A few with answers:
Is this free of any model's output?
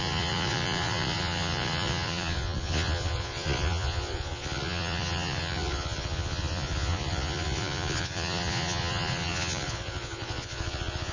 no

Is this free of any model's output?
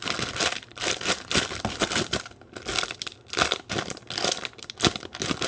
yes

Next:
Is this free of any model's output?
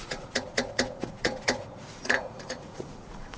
no